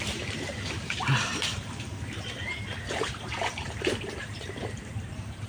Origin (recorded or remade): remade